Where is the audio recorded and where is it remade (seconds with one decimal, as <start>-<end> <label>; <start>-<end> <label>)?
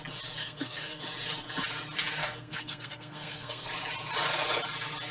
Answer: 0.0-0.4 recorded; 0.4-1.0 remade; 1.0-2.2 recorded; 2.2-3.7 remade; 3.7-5.1 recorded